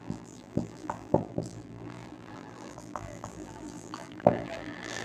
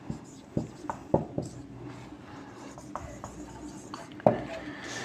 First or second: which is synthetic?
first